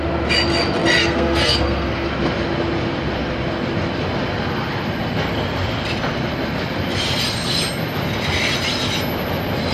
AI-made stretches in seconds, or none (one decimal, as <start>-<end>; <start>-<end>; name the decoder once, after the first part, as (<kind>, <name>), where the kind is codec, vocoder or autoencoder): 1.0-2.1 (codec, SNAC)